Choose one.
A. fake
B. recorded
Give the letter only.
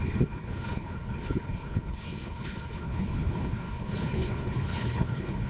A